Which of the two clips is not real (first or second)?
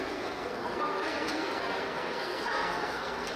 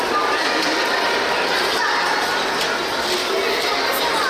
first